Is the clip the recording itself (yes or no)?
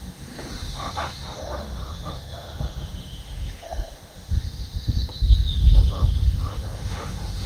no